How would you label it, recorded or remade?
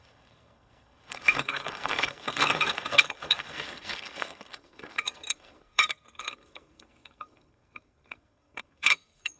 remade